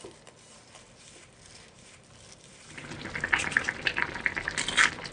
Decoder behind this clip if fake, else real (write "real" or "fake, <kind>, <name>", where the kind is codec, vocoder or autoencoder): real